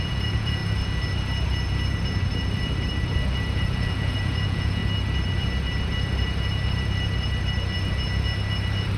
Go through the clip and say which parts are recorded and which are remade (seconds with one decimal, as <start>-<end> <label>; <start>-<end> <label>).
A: 0.0-0.6 remade; 0.6-3.5 recorded; 3.5-4.8 remade; 4.8-9.0 recorded